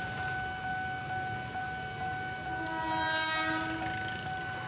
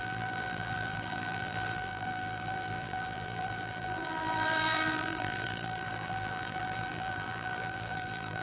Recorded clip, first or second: first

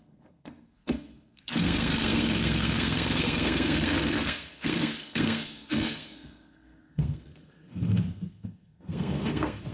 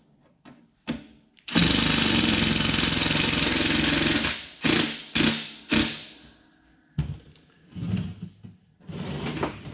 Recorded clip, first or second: second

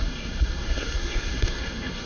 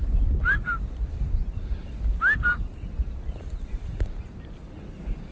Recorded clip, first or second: second